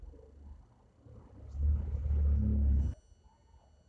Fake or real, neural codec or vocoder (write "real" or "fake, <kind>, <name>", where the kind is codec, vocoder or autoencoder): real